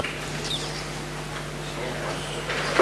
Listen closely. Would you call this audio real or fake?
real